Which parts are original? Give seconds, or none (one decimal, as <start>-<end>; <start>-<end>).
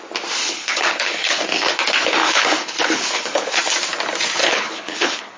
0.0-0.4; 1.7-2.2; 3.6-4.4